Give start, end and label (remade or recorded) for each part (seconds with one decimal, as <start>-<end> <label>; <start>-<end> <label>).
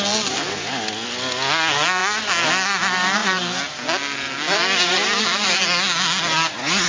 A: 0.0-6.9 recorded